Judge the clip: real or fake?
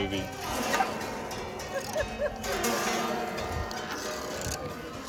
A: real